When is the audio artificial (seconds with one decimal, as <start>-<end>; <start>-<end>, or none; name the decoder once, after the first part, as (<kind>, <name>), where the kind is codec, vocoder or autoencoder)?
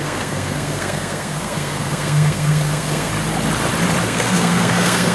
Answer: 0.0-3.1 (codec, SNAC); 4.0-5.1